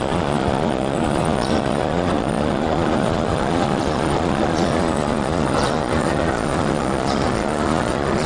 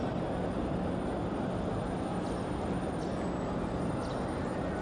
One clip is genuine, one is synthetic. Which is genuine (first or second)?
second